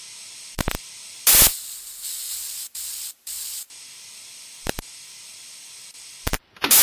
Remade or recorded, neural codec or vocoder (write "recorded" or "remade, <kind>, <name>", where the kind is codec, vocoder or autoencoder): recorded